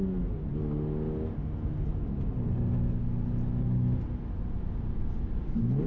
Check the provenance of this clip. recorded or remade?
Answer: recorded